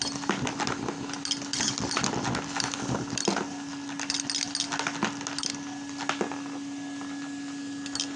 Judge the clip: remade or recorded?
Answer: recorded